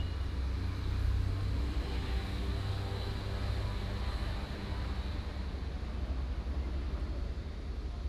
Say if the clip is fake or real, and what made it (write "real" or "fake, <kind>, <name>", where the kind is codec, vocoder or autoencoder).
real